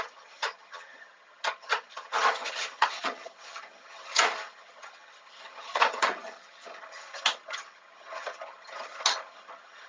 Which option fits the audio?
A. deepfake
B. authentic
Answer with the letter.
A